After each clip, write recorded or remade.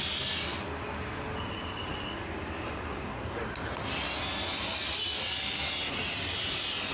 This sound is recorded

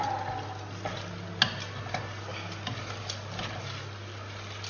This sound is recorded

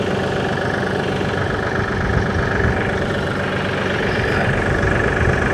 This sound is recorded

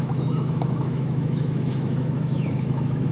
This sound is remade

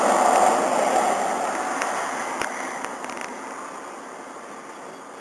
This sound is recorded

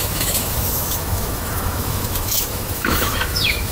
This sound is remade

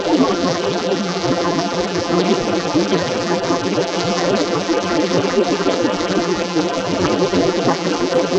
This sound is remade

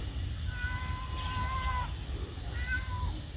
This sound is recorded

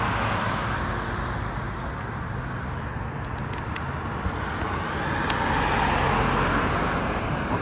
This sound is recorded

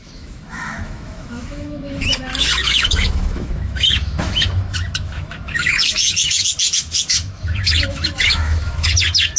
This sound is remade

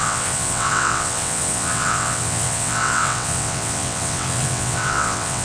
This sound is remade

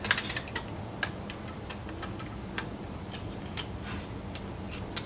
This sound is recorded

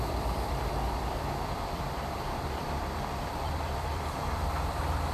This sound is remade